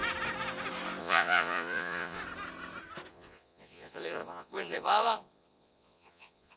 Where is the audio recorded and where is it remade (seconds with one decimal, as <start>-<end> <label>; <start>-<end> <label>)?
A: 0.0-1.0 recorded; 1.0-2.2 remade; 2.2-3.1 recorded; 3.1-6.6 remade